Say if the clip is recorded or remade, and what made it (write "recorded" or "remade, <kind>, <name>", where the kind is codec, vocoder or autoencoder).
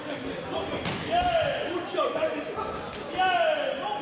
recorded